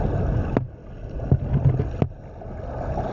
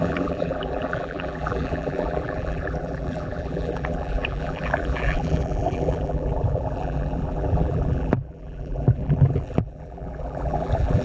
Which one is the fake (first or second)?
second